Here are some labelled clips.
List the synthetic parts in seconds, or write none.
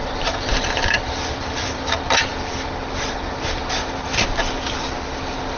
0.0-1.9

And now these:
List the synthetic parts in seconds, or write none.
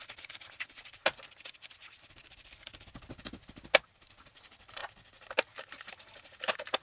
0.0-1.0; 4.0-4.8; 5.9-6.8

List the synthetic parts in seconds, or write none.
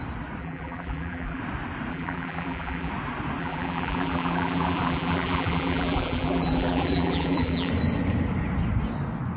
0.4-1.4; 1.9-2.9; 3.4-7.7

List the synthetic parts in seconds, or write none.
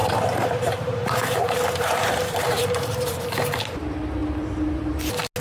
0.0-3.2